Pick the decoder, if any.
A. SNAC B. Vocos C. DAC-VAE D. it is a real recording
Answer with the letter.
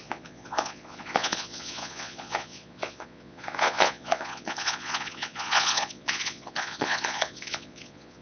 B